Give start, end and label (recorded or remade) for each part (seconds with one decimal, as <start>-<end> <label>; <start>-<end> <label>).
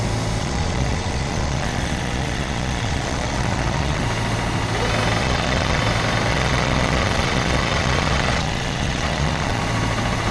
0.0-0.4 recorded; 0.4-4.0 remade; 4.0-5.2 recorded; 5.2-5.8 remade; 5.8-6.3 recorded; 6.3-9.6 remade; 9.6-10.3 recorded